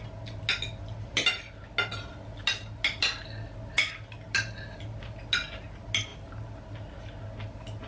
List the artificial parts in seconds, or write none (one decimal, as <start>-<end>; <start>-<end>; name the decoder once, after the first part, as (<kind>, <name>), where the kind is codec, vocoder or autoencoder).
none